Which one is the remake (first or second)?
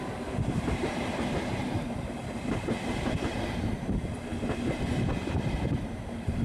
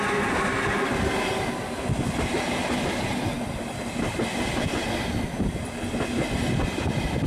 first